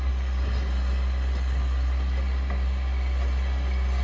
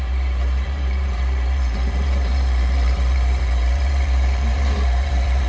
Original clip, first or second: first